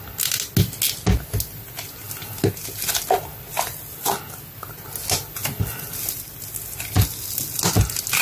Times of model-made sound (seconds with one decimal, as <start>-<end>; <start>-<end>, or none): none